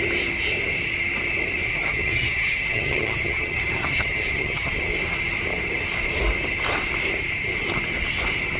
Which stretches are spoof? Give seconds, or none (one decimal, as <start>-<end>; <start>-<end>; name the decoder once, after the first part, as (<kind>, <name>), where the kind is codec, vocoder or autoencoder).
1.7-4.7 (vocoder, HiFi-GAN)